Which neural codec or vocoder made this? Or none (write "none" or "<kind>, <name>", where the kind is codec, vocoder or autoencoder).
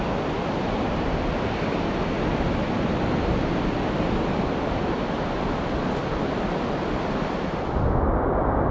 none